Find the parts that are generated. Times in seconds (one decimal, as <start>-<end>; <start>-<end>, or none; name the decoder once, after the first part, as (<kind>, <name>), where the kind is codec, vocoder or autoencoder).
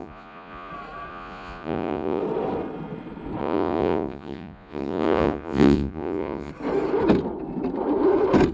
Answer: 0.0-0.7 (vocoder, Vocos); 1.1-2.2; 3.4-6.5